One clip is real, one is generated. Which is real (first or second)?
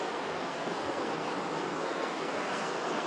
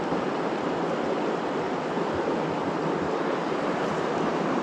second